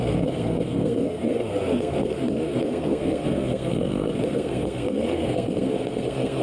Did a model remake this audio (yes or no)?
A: yes